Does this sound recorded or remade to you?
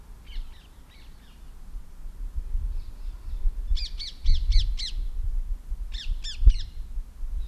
recorded